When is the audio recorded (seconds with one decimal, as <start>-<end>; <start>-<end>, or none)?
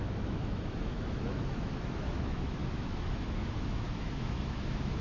none